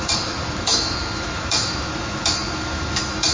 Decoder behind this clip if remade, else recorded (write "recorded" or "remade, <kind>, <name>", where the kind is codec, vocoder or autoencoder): remade, autoencoder, DAC-VAE